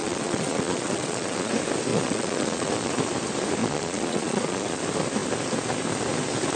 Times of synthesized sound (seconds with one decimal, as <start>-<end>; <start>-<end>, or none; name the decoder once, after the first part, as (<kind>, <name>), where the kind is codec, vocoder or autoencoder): 0.0-1.5 (vocoder, Vocos); 1.9-2.9; 3.6-4.8